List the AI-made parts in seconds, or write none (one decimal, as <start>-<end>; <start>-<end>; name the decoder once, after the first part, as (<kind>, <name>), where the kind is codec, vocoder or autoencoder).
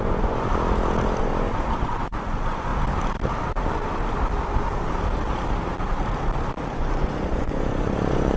0.0-0.5 (vocoder, Vocos); 1.2-2.7; 6.7-8.4